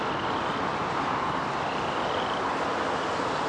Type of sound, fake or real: real